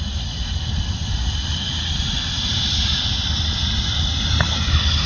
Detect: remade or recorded recorded